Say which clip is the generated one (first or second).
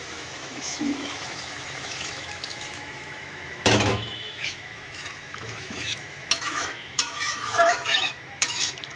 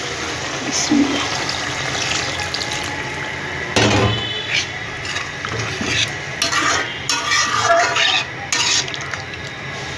first